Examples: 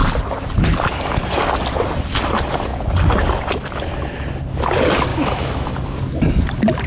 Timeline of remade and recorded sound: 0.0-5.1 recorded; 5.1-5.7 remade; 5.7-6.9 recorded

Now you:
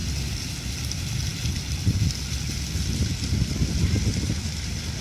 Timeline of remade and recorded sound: 0.0-5.0 recorded

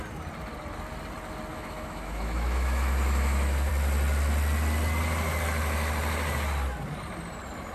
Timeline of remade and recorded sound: 0.0-1.5 recorded; 1.5-3.7 remade; 3.7-7.7 recorded

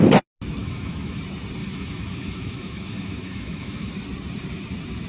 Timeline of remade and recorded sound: 0.0-0.6 recorded; 0.6-1.2 remade; 1.2-1.6 recorded; 1.6-3.9 remade; 3.9-5.1 recorded